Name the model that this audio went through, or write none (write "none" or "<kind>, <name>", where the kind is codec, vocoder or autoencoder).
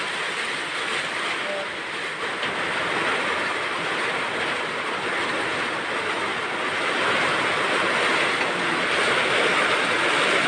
none